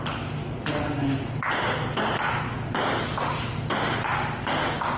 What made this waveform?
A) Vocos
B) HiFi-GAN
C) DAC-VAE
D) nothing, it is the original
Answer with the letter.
D